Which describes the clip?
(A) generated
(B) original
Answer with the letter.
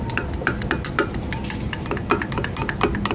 B